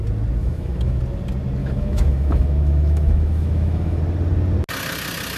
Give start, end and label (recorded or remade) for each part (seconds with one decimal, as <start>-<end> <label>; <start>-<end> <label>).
0.0-0.4 recorded; 0.4-1.0 remade; 1.0-1.6 recorded; 1.6-4.0 remade; 4.0-5.4 recorded